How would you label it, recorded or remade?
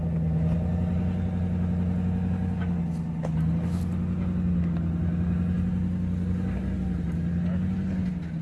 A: recorded